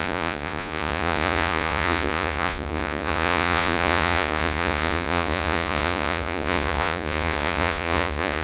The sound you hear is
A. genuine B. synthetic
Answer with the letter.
B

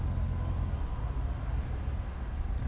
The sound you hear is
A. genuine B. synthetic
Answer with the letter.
A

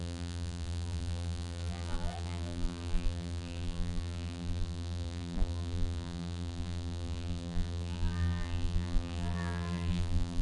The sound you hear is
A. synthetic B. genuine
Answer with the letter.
A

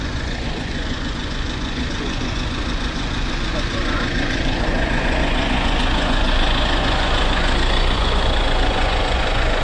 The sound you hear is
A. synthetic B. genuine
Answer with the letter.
A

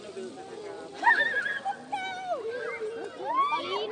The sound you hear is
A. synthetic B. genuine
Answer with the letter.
B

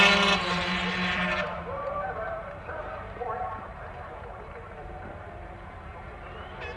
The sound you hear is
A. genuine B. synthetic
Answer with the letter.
B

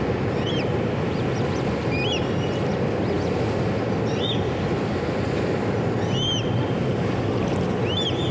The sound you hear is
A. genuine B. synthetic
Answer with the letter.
A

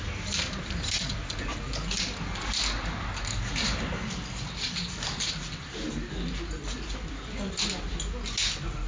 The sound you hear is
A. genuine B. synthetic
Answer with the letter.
A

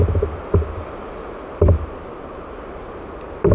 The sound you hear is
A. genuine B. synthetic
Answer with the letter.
A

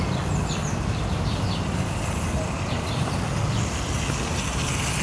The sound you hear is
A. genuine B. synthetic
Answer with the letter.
A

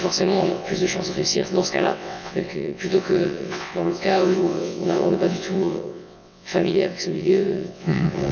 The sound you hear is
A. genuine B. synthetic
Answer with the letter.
B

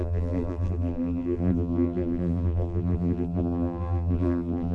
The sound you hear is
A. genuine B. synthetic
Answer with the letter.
B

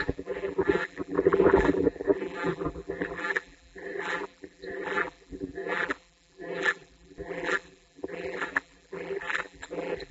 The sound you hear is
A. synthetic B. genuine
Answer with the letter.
A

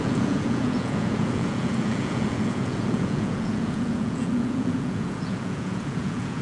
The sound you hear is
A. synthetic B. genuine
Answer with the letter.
A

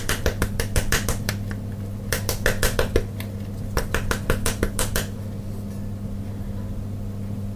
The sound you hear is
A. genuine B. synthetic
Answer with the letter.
A